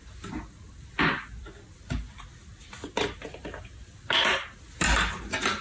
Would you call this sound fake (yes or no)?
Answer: no